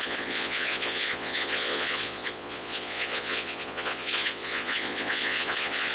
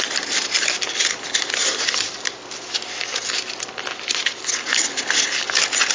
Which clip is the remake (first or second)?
first